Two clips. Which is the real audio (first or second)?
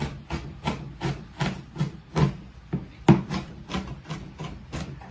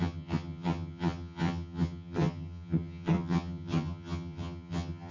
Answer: first